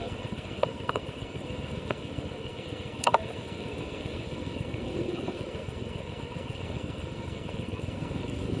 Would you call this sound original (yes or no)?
no